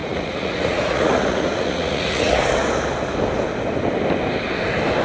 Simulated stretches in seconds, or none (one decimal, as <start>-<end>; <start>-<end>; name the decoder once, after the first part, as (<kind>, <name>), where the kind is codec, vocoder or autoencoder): 0.0-2.4 (vocoder, Vocos)